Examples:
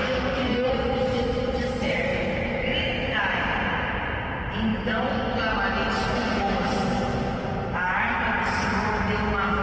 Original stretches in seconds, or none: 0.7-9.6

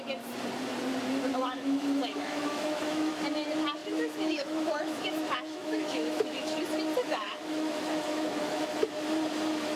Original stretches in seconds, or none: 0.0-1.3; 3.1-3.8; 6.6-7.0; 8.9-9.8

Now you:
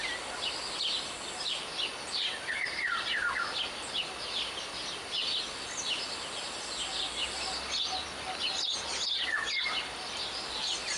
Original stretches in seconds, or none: 0.0-11.0